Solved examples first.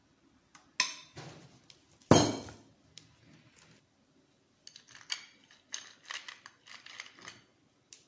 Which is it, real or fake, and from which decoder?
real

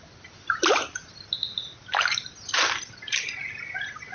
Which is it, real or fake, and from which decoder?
real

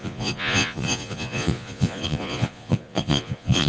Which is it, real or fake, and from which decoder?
fake, vocoder, Vocos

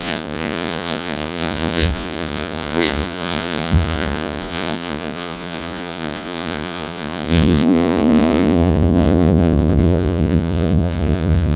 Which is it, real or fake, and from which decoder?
fake, vocoder, Vocos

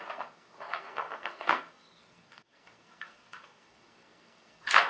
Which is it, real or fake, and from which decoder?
fake, codec, SNAC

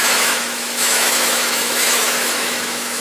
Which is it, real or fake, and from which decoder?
fake, autoencoder, DAC-VAE